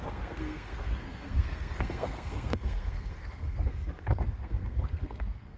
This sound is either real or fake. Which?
fake